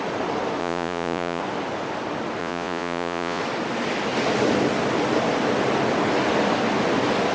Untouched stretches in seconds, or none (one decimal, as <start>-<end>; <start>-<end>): 0.0-0.6; 1.4-2.4; 3.4-7.3